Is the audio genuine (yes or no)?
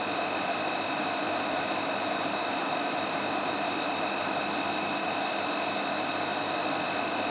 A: yes